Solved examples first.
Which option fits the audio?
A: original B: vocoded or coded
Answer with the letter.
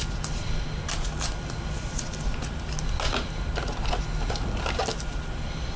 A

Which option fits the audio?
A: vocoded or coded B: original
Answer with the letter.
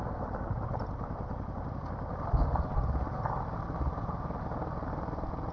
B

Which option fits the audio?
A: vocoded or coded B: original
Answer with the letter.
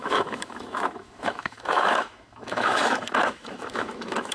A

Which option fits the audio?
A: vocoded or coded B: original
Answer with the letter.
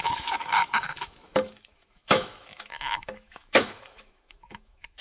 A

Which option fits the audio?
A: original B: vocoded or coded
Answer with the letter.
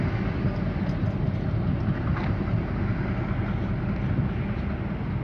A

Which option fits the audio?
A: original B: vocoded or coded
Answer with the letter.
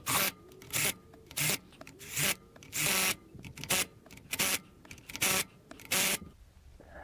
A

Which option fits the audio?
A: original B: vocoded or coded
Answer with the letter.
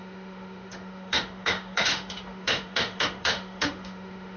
B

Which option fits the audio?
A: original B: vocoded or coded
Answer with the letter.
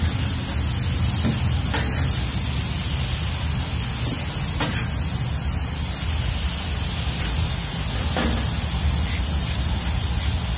A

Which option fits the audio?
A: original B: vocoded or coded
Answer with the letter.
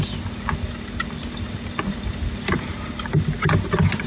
A